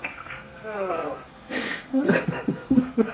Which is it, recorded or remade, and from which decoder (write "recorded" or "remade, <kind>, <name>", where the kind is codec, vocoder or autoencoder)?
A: remade, codec, SNAC